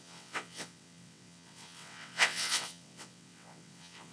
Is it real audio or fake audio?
fake